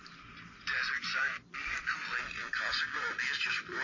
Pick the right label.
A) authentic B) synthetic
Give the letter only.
A